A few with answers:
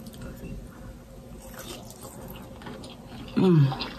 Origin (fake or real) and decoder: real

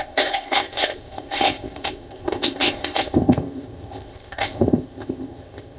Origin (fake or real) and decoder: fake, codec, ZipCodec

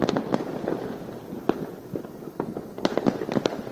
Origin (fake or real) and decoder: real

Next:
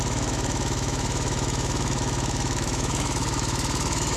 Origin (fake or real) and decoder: fake, autoencoder, DAC-VAE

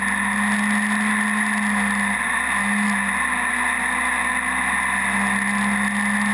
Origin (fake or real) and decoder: real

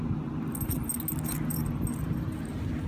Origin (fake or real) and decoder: real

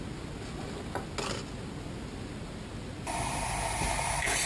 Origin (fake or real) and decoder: real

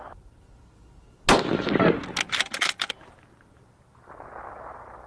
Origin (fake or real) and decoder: real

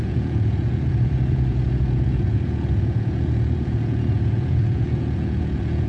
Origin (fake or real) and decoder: fake, vocoder, Vocos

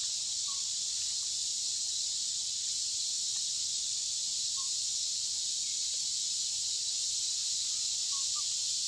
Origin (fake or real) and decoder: real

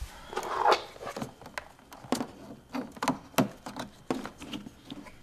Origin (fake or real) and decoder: real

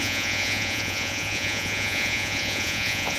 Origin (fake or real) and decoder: fake, vocoder, Vocos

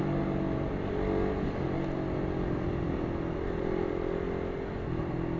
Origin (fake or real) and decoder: real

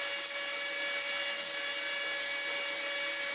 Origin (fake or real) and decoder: real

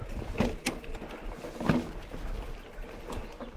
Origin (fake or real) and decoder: real